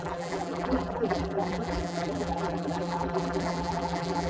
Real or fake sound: fake